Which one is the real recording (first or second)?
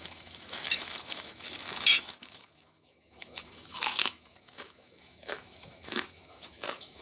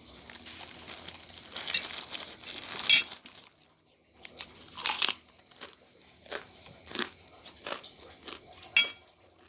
second